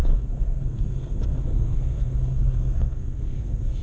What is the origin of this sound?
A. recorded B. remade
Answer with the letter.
B